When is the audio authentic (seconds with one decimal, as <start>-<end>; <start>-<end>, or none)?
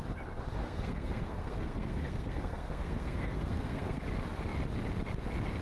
0.0-0.6; 4.0-5.6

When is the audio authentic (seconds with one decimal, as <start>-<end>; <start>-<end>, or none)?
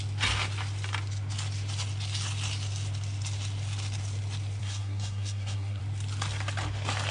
0.0-4.6; 5.8-7.1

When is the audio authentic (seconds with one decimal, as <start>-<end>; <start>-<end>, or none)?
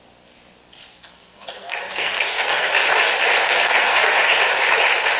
0.0-0.9; 2.7-3.4; 4.1-5.2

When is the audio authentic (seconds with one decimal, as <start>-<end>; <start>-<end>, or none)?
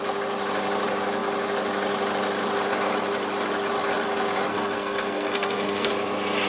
0.0-4.5; 5.9-6.5